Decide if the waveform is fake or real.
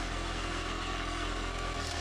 fake